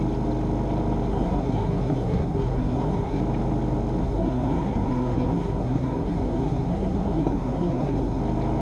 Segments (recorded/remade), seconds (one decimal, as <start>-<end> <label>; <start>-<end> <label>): 0.0-1.1 recorded; 1.1-3.2 remade; 3.2-4.0 recorded; 4.0-8.2 remade; 8.2-8.6 recorded